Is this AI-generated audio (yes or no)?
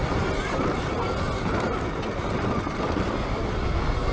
no